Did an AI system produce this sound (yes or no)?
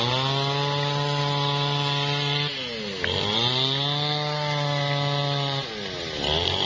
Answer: no